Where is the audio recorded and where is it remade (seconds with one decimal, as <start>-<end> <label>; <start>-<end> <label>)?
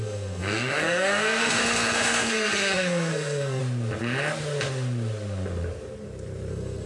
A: 0.0-3.6 remade; 3.6-6.5 recorded; 6.5-6.9 remade